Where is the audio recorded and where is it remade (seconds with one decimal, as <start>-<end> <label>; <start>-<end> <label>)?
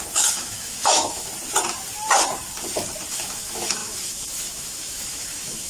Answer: 0.0-1.3 remade; 1.3-3.1 recorded; 3.1-5.7 remade